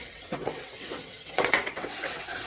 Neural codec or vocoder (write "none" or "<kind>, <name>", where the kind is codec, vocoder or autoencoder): vocoder, WaveNeXt